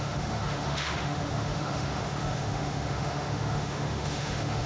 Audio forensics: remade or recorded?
remade